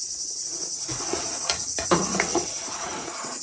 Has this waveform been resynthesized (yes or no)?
yes